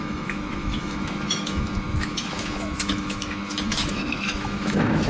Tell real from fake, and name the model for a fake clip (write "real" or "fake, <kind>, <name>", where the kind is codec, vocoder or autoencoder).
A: fake, autoencoder, DAC-VAE